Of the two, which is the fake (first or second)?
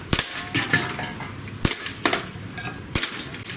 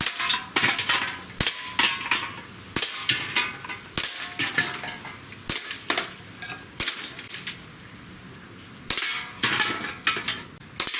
first